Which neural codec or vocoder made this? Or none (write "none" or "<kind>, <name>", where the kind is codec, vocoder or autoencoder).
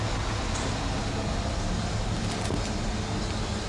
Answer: none